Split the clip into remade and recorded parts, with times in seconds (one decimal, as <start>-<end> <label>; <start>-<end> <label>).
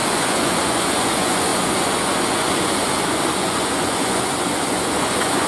0.0-5.5 remade